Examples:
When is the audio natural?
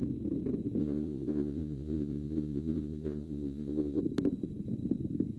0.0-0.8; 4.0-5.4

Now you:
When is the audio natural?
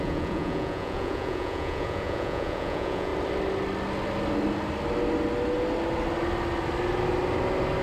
3.1-7.8